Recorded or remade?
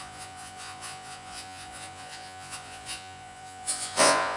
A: remade